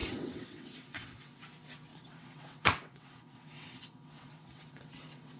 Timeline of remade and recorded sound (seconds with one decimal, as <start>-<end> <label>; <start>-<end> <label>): 0.0-1.4 remade; 1.4-1.9 recorded; 1.9-5.4 remade